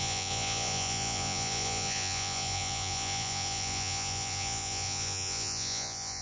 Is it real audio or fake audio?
fake